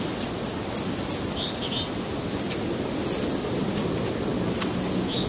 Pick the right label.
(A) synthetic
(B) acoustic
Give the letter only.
B